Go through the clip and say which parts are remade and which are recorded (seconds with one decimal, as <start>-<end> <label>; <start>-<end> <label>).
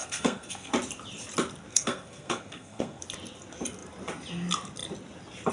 0.0-0.7 remade; 0.7-1.7 recorded; 1.7-3.0 remade; 3.0-5.5 recorded